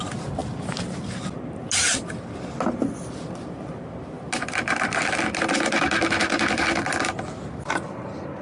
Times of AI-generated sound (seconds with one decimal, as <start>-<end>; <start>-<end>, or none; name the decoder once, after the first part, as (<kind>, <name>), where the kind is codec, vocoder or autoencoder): none